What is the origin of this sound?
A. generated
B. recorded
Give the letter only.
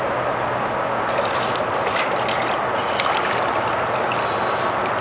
B